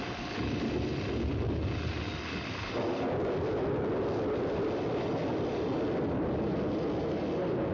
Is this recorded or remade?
recorded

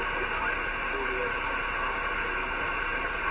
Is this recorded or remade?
recorded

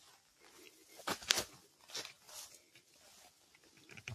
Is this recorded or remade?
recorded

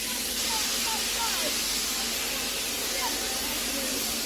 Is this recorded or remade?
recorded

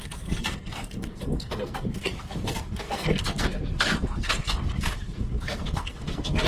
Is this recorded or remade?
remade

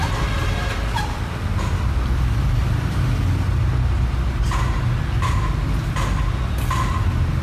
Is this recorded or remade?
recorded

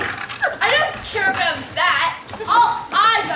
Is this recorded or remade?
recorded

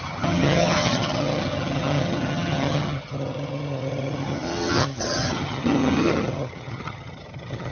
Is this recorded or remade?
remade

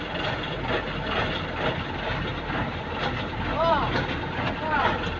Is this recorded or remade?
remade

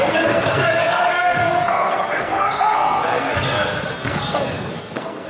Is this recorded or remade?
remade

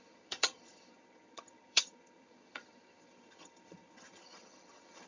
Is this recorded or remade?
remade